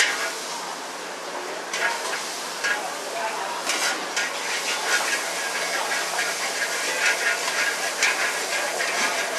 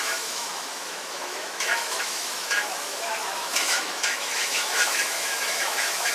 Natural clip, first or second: first